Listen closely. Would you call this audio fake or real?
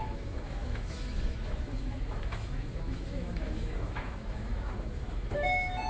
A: fake